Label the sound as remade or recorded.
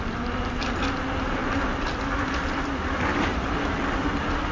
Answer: recorded